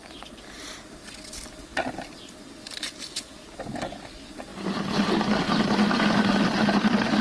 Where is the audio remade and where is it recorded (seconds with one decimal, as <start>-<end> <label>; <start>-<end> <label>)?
0.0-7.2 recorded